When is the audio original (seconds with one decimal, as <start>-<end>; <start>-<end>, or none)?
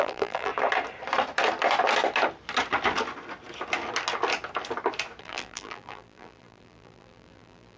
0.5-5.2